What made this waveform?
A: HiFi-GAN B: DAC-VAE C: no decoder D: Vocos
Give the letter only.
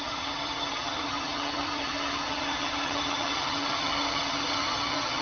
A